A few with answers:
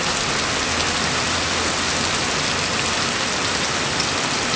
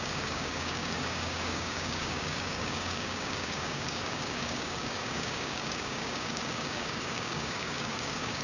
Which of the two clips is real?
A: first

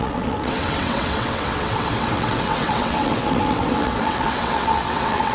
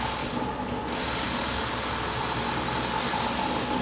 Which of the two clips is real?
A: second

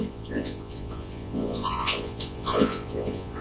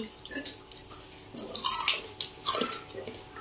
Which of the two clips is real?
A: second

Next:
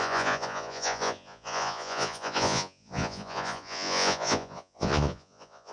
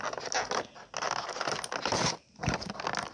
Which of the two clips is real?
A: second